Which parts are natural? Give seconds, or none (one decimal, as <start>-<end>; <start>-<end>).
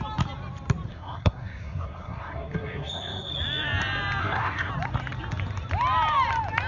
0.0-0.9; 3.3-4.2; 4.7-6.7